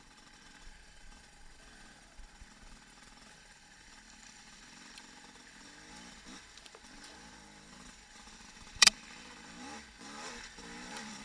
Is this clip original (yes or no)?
no